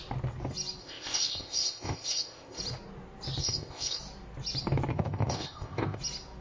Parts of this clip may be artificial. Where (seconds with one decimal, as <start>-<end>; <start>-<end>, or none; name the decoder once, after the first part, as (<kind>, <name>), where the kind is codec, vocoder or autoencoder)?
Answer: 0.8-2.6 (codec, ZipCodec); 3.4-4.0; 4.9-6.0